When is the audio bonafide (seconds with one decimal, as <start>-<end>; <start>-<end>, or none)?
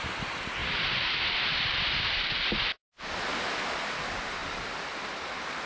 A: 0.0-0.6; 3.1-4.4; 5.1-5.7